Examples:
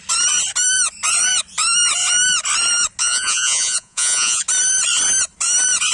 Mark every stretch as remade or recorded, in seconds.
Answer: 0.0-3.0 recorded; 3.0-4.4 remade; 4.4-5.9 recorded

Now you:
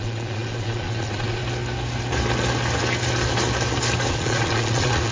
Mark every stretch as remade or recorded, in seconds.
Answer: 0.0-1.4 remade; 1.4-4.1 recorded; 4.1-5.1 remade

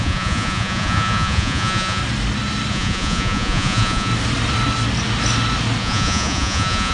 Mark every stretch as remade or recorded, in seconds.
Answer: 0.0-2.0 remade; 2.0-2.7 recorded; 2.7-4.1 remade; 4.1-5.8 recorded; 5.8-6.9 remade

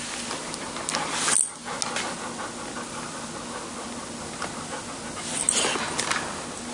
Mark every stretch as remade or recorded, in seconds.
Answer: 0.0-6.7 recorded

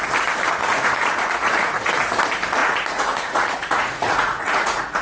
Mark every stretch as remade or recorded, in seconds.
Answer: 0.0-0.6 recorded; 0.6-1.9 remade; 1.9-2.6 recorded; 2.6-5.0 remade

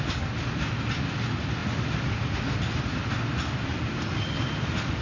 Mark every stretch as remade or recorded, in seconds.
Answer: 0.0-5.0 recorded

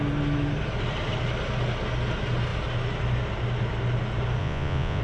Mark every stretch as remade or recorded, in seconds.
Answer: 0.0-4.4 recorded; 4.4-5.0 remade

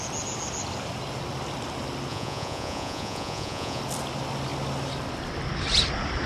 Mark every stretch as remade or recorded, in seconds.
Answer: 0.0-2.1 recorded; 2.1-3.8 remade; 3.8-6.3 recorded